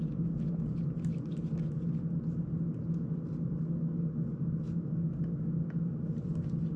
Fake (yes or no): no